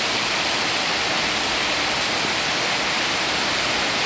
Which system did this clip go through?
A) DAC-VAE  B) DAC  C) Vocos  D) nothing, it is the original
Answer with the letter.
D